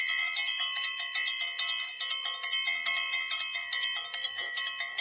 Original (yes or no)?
yes